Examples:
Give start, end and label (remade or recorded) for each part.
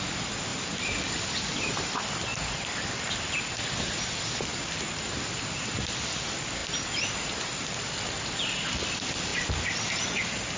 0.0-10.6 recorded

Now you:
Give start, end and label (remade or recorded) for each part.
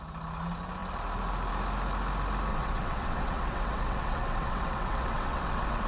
0.0-2.5 recorded; 2.5-5.9 remade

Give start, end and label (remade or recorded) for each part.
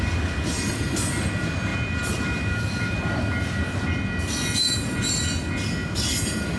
0.0-6.6 recorded